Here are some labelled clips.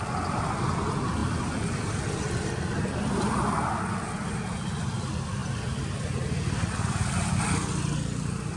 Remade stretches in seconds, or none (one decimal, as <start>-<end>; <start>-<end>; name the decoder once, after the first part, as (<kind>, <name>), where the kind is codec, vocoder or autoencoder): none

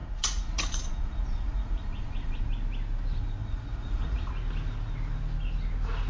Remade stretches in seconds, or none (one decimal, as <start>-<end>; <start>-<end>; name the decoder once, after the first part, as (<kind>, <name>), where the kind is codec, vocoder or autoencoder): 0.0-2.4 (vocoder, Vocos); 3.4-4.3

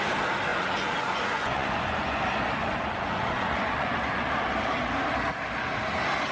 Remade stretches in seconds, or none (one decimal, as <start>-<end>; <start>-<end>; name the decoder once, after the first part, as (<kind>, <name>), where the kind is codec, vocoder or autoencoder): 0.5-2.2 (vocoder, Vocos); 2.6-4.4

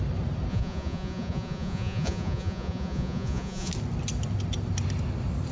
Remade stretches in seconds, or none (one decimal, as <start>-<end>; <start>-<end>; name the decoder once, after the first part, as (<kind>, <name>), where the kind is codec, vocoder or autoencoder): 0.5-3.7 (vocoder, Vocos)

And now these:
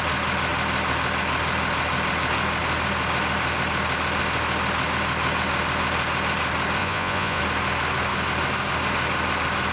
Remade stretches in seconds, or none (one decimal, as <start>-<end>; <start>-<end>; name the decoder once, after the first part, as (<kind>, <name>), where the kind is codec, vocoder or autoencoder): 6.8-7.4 (vocoder, Vocos)